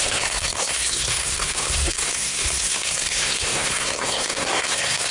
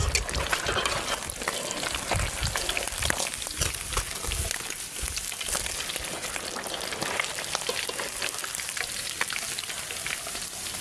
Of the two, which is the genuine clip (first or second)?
second